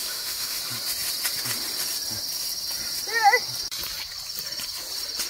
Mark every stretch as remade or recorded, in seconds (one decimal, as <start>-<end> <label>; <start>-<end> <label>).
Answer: 0.0-0.6 remade; 0.6-5.3 recorded